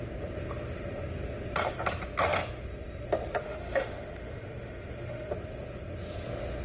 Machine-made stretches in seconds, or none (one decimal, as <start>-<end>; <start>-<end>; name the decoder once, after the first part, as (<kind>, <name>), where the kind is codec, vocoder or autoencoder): 3.4-5.3 (autoencoder, DAC-VAE)